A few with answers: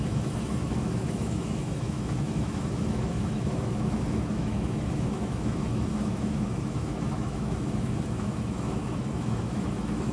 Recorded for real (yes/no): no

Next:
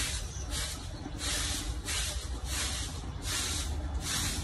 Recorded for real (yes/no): yes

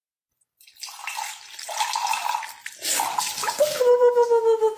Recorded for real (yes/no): yes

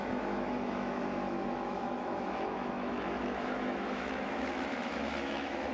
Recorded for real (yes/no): no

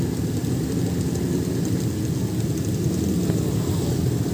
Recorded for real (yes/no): yes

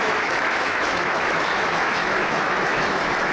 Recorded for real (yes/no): no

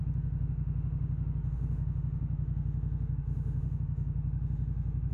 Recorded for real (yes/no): no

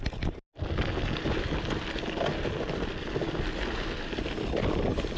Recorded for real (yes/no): yes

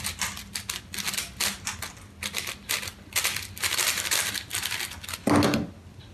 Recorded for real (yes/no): yes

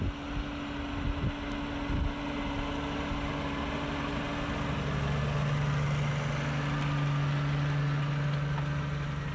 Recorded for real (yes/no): yes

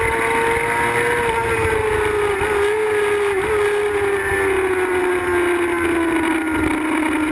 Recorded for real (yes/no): yes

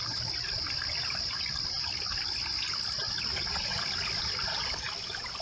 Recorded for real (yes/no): yes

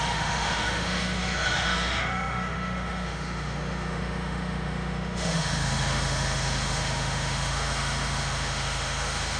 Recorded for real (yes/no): no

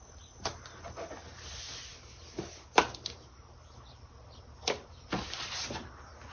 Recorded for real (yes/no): yes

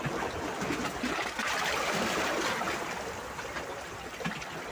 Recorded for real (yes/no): yes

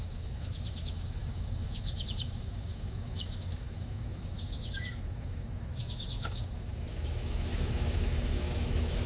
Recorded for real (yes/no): no